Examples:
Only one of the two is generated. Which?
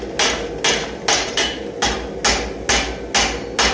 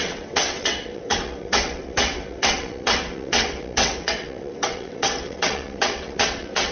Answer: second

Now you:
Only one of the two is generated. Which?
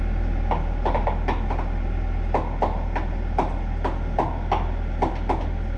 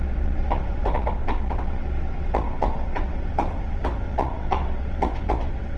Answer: second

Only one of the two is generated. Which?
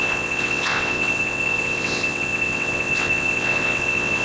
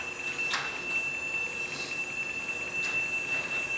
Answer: first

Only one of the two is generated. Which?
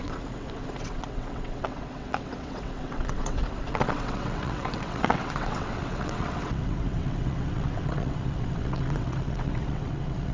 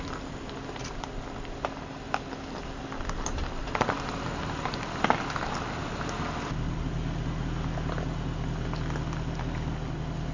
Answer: first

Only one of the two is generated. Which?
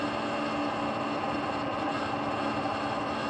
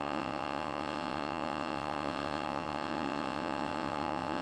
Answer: second